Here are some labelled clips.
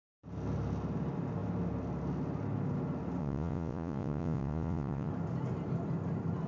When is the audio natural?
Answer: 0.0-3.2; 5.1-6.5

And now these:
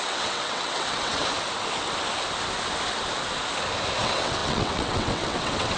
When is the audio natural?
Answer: 1.2-4.0

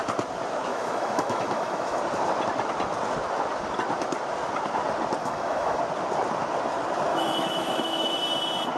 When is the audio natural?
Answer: 0.0-0.7; 2.0-5.2; 5.8-7.1; 8.2-8.8

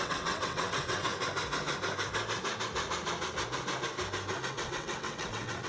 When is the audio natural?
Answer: 1.1-4.5

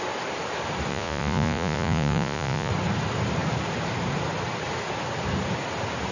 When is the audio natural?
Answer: 0.0-0.9; 2.7-6.1

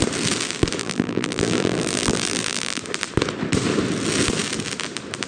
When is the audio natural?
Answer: 0.0-0.8; 2.8-5.3